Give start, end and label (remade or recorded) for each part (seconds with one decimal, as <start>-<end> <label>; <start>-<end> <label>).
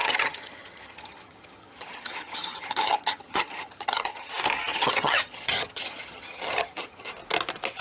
0.0-4.3 remade; 4.3-4.7 recorded; 4.7-7.1 remade; 7.1-7.8 recorded